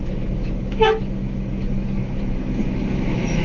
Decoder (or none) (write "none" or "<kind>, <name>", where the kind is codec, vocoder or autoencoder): autoencoder, DAC-VAE